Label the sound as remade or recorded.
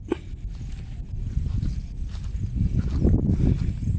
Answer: recorded